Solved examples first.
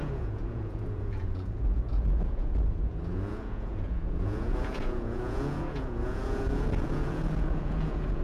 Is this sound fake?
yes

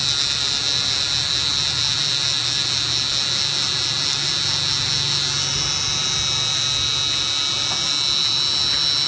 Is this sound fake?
no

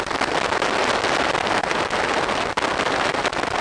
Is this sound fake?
no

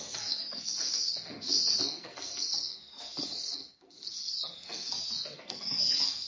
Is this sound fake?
yes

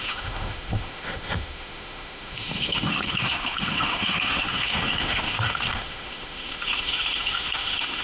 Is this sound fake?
yes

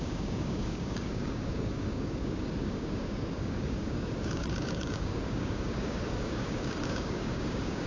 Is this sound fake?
yes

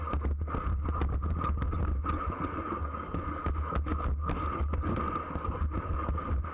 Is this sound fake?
no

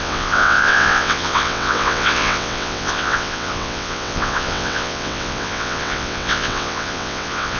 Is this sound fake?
yes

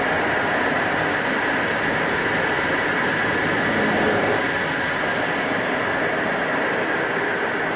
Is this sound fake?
no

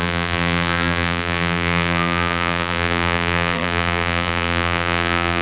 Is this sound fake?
yes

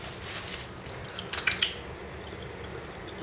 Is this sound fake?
no